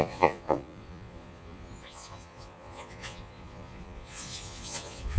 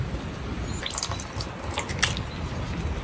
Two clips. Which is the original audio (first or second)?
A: second